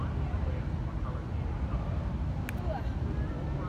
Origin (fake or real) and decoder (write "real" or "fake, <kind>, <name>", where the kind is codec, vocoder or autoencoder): real